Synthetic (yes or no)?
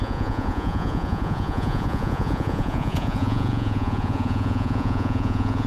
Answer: yes